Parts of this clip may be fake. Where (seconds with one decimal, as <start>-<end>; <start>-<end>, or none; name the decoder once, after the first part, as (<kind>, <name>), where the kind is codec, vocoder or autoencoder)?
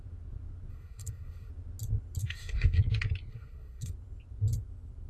0.7-1.5 (codec, SNAC); 2.2-2.8; 3.3-3.9